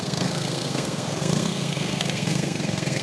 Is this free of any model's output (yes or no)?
no